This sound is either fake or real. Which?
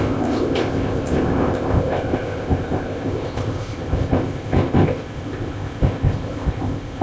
fake